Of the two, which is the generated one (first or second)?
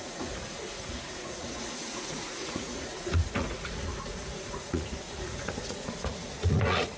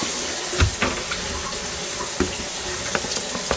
first